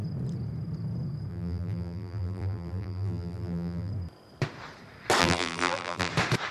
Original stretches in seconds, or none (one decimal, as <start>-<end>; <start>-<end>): 0.0-1.3; 3.9-5.2; 6.1-6.5